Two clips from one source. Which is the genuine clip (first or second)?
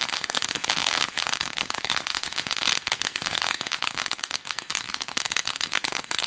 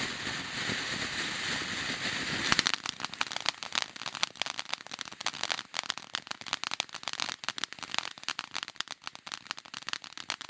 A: second